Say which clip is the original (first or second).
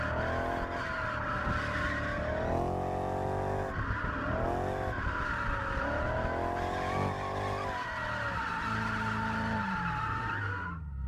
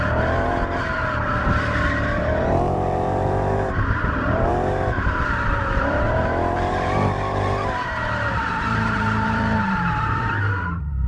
first